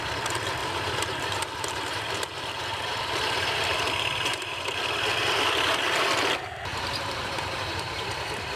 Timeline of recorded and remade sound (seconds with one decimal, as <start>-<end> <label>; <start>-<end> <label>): 0.0-0.6 recorded; 0.6-5.3 remade; 5.3-6.7 recorded; 6.7-8.6 remade